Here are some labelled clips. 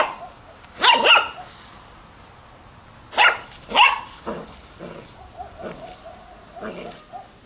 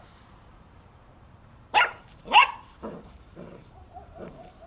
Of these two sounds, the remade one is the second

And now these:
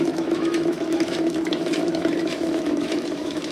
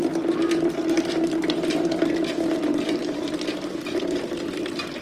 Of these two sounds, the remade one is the first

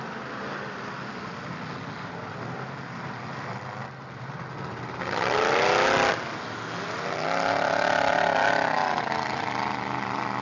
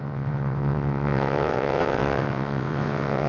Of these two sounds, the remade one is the second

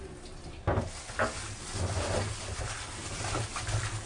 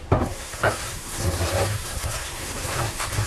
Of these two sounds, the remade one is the second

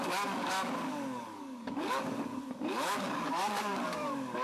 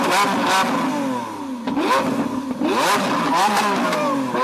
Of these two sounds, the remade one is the first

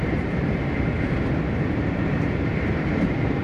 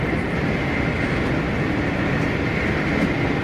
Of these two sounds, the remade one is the first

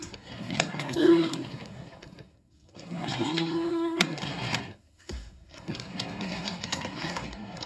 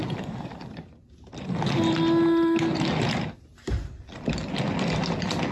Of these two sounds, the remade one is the first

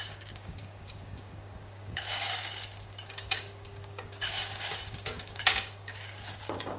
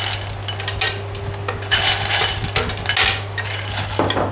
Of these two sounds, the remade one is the first